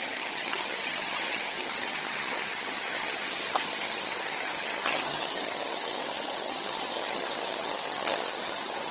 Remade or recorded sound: remade